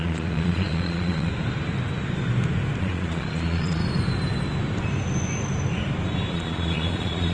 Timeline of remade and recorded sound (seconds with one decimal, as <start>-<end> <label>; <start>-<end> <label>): 0.0-1.3 remade; 1.3-2.8 recorded; 2.8-3.8 remade; 3.8-6.3 recorded; 6.3-7.3 remade